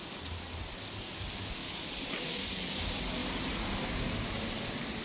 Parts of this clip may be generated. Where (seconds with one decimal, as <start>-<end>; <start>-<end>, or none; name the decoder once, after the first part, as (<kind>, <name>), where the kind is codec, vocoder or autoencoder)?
1.6-2.4 (vocoder, BigVGAN v2); 3.2-5.0